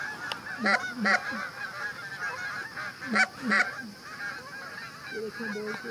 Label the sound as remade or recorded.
recorded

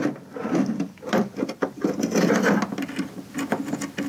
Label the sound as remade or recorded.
recorded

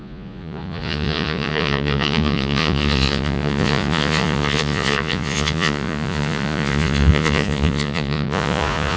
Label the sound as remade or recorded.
remade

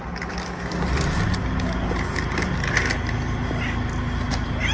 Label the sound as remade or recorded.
recorded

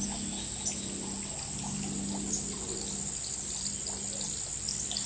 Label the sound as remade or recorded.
recorded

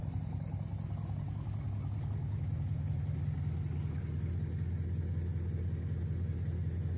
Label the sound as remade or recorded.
recorded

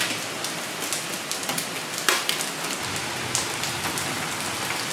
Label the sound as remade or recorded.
recorded